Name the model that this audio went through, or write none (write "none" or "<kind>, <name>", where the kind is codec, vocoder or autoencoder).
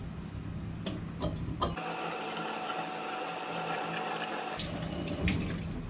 none